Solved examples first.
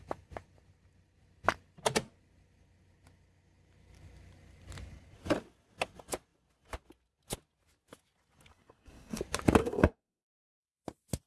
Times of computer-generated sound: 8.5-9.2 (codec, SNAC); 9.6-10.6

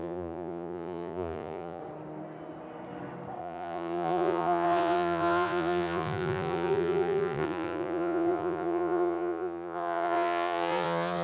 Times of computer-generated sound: 0.0-1.8 (vocoder, Vocos); 3.4-11.2

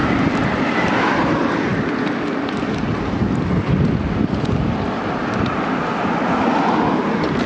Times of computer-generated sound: none

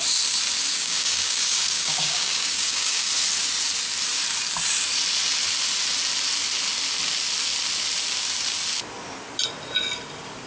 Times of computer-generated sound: 0.7-3.1 (codec, DAC)

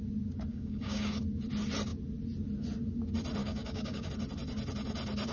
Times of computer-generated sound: 0.5-1.2 (codec, DAC); 3.4-4.1

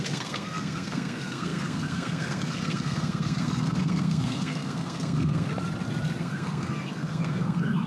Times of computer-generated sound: 0.0-5.5 (codec, SNAC); 6.2-7.9